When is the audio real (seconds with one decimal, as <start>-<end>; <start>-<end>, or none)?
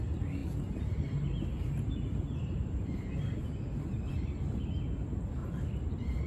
0.0-0.4; 4.1-5.4